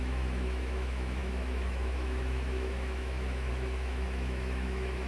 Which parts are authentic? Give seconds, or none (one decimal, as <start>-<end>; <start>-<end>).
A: none